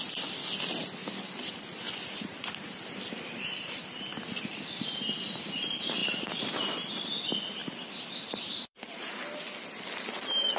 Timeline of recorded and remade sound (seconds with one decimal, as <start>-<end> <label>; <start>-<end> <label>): 0.0-1.0 recorded; 1.0-5.4 remade; 5.4-7.6 recorded; 7.6-8.8 remade; 8.8-10.6 recorded